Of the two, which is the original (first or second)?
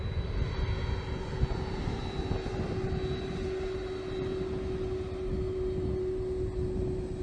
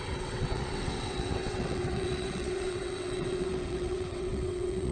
first